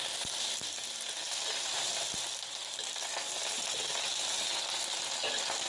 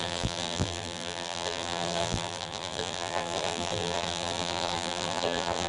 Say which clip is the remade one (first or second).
second